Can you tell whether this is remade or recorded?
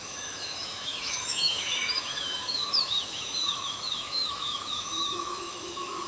remade